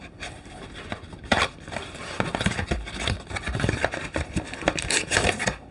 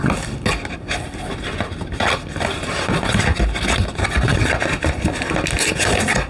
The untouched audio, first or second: second